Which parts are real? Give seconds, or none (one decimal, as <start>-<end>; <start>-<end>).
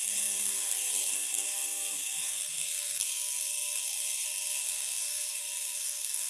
none